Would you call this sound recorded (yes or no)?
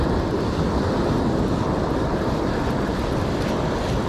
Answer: yes